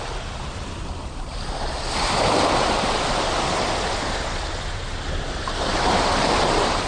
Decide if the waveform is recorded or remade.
recorded